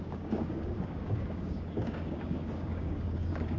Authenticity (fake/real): fake